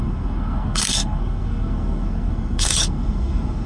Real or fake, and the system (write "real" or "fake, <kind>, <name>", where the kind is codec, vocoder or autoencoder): fake, codec, SNAC